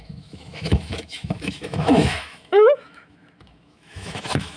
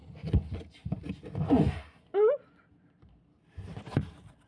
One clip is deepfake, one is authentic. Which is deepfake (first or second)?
first